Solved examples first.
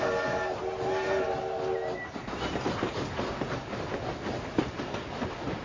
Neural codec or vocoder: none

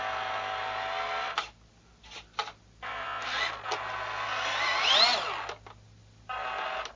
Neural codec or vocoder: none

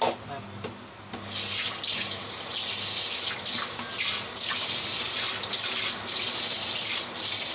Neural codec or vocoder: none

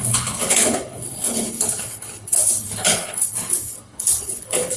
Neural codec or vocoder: codec, HILCodec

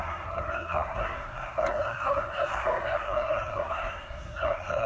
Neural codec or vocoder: codec, SNAC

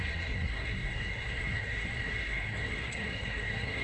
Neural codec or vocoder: codec, SNAC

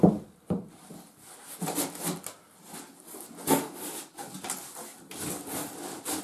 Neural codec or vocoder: none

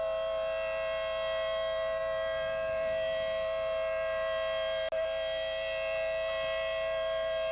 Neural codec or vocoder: none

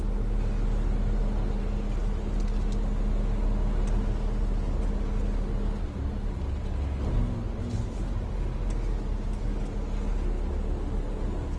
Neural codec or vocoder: none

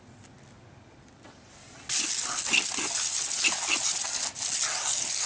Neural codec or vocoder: none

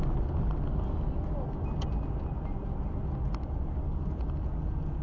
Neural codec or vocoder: none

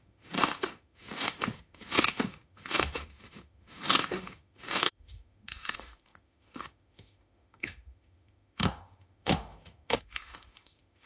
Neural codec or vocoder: autoencoder, DAC-VAE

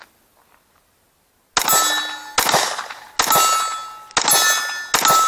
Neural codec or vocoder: none